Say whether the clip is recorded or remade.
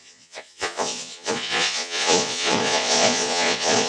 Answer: remade